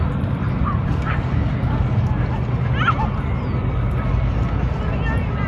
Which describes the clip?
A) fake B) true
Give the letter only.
B